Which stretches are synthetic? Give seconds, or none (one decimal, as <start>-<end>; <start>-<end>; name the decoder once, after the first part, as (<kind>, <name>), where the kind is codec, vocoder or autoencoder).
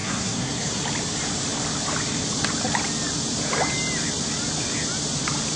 0.0-0.8 (codec, SNAC)